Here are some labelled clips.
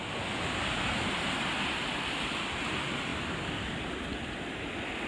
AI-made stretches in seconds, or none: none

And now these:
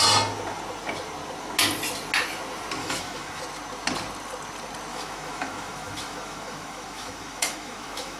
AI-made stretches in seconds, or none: 2.8-3.4 (autoencoder, DAC-VAE); 4.9-8.2

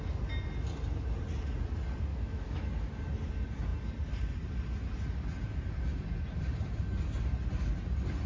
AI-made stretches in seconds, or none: 2.1-2.7 (autoencoder, DAC-VAE)

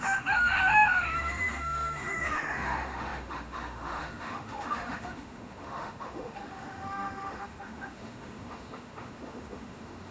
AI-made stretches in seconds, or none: 0.0-10.1 (autoencoder, DAC-VAE)

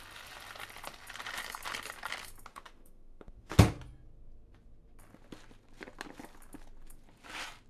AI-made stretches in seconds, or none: 2.5-3.5 (autoencoder, DAC-VAE)